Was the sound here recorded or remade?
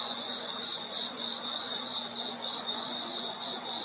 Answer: remade